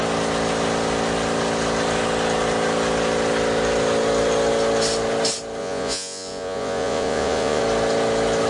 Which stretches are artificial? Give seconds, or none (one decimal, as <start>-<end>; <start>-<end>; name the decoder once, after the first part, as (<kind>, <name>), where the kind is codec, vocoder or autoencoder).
5.6-7.6 (vocoder, Vocos)